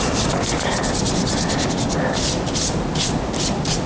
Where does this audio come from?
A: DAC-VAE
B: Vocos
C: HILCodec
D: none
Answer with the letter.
D